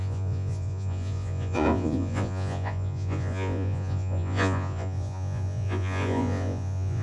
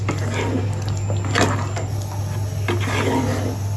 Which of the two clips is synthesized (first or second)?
first